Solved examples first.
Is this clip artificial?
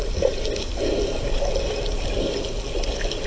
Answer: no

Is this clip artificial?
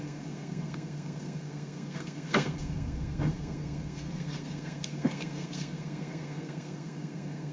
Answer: yes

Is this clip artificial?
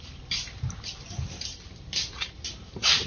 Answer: yes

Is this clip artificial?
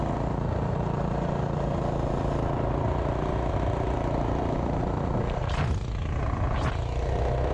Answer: no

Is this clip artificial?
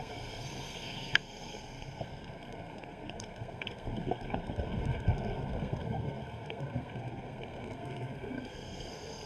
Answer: yes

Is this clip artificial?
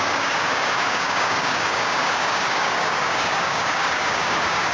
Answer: yes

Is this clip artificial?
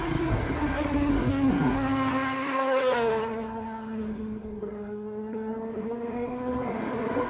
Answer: yes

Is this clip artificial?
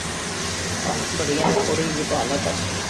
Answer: no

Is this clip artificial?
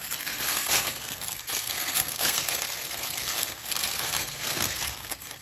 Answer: yes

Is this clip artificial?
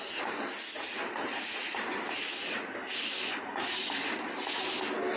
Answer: no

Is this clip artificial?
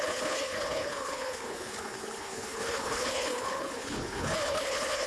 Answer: yes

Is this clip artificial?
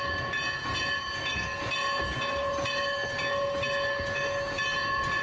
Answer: yes